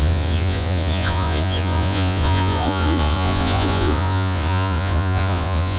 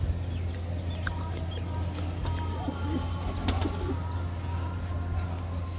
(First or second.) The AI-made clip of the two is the first